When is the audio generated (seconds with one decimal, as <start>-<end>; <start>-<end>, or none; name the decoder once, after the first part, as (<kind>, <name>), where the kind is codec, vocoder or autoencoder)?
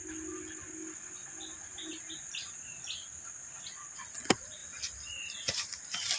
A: none